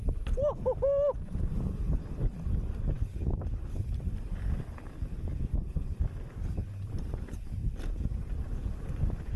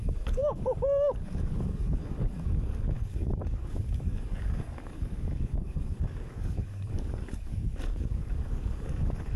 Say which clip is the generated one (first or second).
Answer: second